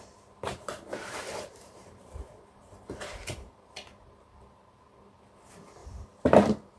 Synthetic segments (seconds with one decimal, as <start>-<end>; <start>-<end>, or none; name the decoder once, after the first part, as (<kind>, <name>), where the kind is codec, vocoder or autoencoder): 0.5-3.7 (vocoder, BigVGAN v2); 5.8-6.8